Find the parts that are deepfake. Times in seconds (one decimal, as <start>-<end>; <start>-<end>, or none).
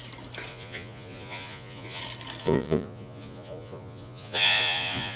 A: 0.5-2.0; 2.4-5.2